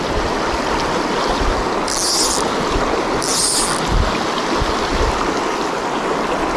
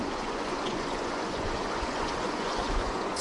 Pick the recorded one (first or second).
first